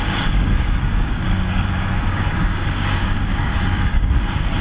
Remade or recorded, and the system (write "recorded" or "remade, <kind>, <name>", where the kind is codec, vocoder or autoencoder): remade, codec, DAC